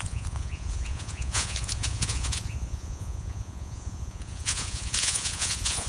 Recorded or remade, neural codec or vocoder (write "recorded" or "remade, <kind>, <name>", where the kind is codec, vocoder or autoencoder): remade, vocoder, Vocos